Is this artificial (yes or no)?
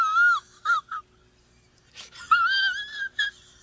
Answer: no